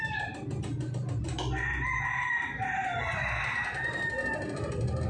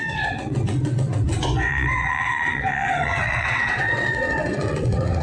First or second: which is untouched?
first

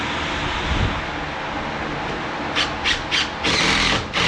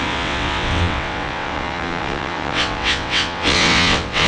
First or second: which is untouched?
first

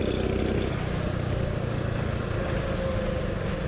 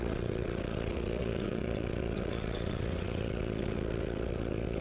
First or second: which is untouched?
first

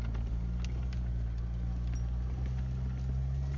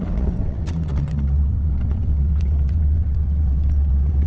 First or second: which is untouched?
first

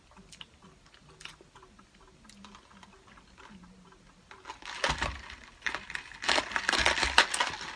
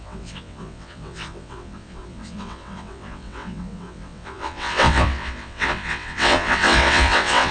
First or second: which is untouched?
first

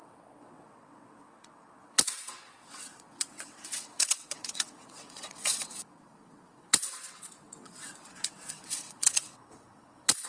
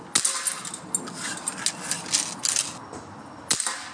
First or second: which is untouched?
second